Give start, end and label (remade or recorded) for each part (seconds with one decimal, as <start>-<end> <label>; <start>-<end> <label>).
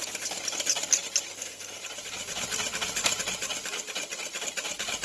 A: 0.0-1.3 recorded; 1.3-1.8 remade; 1.8-5.0 recorded